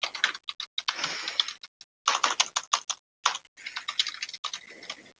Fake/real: real